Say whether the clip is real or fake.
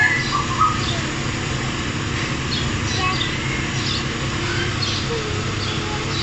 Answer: real